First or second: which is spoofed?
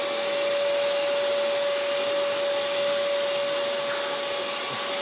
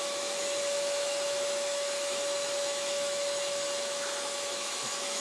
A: second